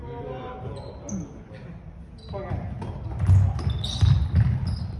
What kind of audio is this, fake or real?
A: real